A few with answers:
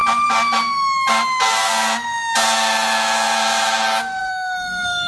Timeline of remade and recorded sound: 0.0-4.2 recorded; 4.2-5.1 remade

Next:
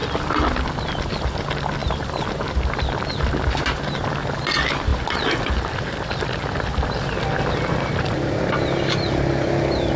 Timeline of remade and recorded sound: 0.0-10.0 recorded

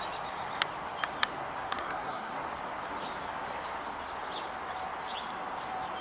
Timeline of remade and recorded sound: 0.0-1.6 recorded; 1.6-2.3 remade; 2.3-6.0 recorded

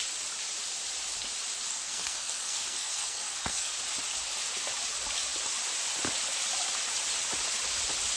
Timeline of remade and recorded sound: 0.0-1.7 recorded; 1.7-3.8 remade; 3.8-8.2 recorded

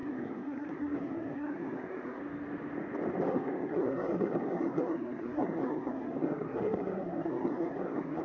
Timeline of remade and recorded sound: 0.0-2.2 remade; 2.2-3.3 recorded; 3.3-8.2 remade

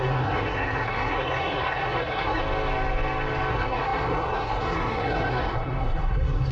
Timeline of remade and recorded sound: 0.0-2.4 remade; 2.4-3.5 recorded; 3.5-6.5 remade

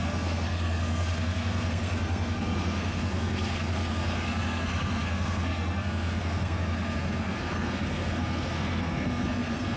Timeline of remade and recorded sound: 0.0-9.8 remade

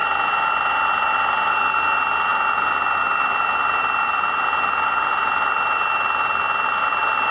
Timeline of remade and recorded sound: 0.0-7.3 recorded